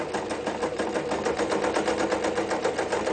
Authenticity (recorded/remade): recorded